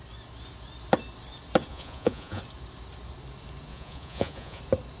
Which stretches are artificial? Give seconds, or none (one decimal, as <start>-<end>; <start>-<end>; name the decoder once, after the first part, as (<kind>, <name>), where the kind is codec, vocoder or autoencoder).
1.7-2.4 (vocoder, Vocos); 3.7-4.6